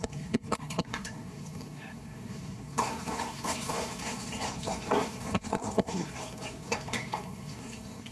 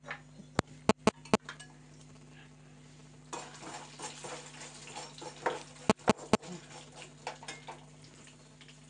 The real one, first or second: second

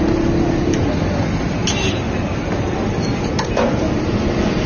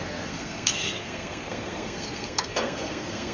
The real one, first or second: first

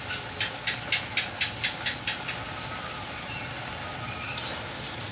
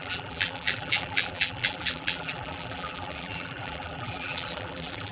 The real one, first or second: first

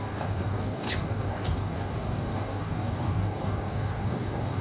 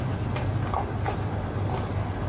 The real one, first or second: second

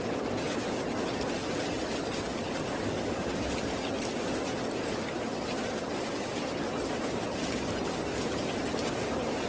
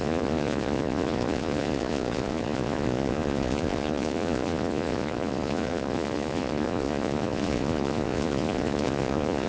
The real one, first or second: first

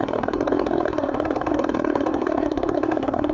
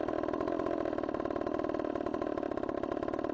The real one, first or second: second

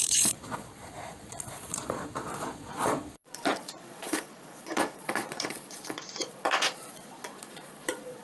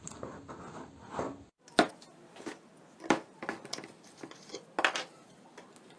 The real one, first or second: second